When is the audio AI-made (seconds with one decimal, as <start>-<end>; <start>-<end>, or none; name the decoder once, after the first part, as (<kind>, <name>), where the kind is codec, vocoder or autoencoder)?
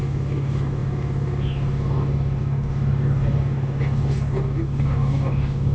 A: 0.0-5.7 (codec, DAC)